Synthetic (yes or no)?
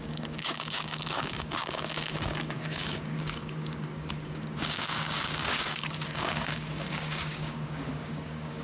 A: yes